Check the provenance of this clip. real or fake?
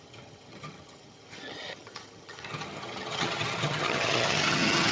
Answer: fake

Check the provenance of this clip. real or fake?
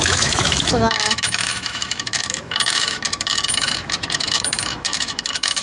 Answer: fake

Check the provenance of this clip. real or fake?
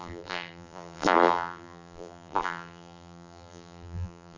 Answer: fake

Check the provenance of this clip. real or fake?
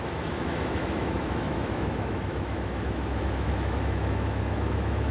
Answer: fake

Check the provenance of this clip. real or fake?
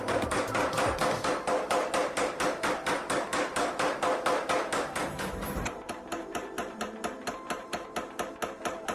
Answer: fake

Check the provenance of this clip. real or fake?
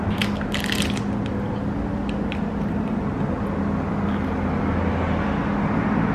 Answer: real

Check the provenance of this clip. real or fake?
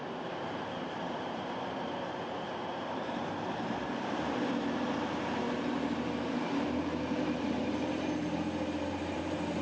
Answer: fake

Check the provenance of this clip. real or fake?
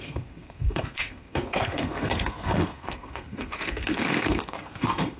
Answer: fake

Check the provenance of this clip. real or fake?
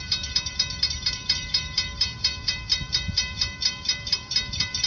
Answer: fake